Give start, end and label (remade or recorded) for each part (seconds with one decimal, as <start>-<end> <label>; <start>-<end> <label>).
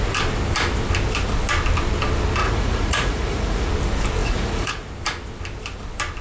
0.0-2.4 recorded; 2.4-3.7 remade; 3.7-4.2 recorded; 4.2-4.9 remade; 4.9-6.2 recorded